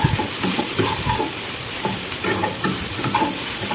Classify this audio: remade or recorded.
recorded